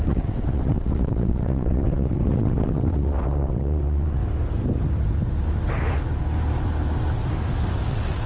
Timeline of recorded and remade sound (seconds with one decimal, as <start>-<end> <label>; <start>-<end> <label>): 0.0-4.2 remade; 4.2-7.9 recorded; 7.9-8.3 remade